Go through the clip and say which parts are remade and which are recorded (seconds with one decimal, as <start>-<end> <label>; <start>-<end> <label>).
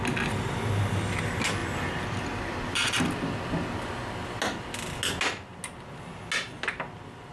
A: 0.0-7.3 recorded